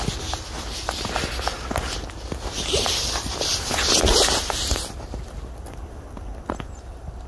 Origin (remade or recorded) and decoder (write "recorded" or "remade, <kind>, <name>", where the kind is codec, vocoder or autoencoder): recorded